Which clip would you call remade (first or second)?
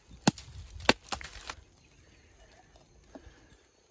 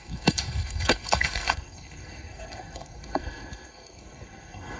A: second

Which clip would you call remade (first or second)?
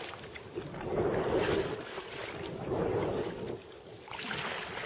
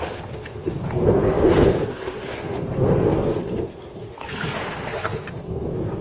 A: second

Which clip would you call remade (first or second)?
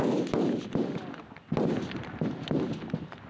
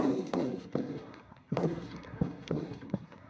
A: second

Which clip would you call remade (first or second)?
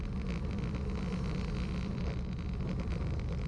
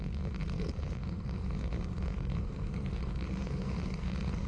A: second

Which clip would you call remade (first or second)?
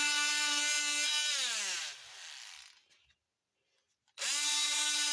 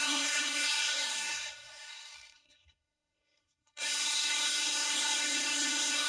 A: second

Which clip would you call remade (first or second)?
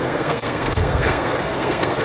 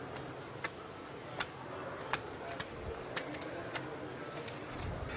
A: first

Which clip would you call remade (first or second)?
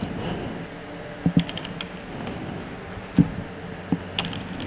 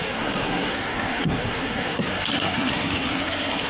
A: second